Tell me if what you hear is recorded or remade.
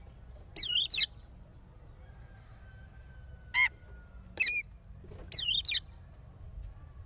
recorded